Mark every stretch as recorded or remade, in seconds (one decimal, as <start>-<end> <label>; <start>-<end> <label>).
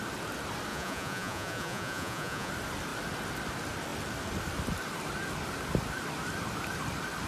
0.0-0.7 recorded; 0.7-2.5 remade; 2.5-7.3 recorded